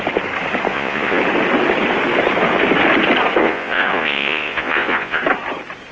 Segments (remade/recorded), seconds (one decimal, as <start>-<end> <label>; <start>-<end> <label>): 0.0-0.7 recorded; 0.7-1.2 remade; 1.2-3.4 recorded; 3.4-5.2 remade; 5.2-5.9 recorded